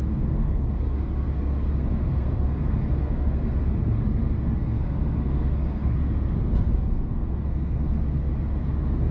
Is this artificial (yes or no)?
yes